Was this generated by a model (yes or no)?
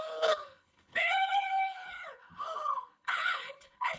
yes